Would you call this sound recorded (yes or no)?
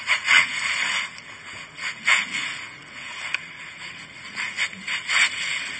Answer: no